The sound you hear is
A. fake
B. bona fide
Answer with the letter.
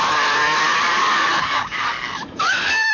A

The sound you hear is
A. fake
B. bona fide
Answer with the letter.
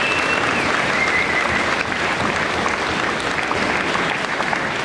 B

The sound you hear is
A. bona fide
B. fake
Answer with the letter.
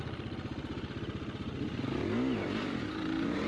A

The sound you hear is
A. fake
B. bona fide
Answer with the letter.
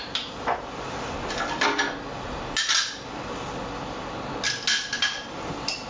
B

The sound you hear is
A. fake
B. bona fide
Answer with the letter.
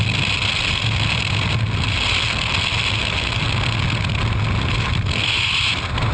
B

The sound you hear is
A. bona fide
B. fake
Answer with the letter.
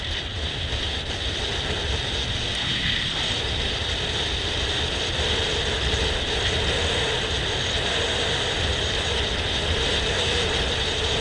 A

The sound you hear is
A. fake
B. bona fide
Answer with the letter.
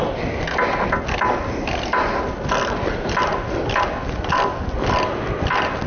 B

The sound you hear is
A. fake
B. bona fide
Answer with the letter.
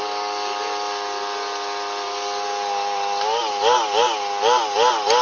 B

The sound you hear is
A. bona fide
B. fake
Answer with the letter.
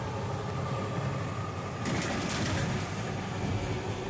A